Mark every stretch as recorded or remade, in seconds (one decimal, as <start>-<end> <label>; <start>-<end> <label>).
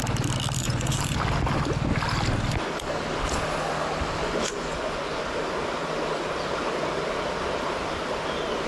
0.0-0.6 recorded; 0.6-1.2 remade; 1.2-4.2 recorded; 4.2-5.2 remade; 5.2-8.7 recorded